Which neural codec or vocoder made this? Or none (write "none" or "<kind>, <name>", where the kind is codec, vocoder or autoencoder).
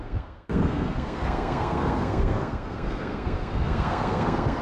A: codec, SNAC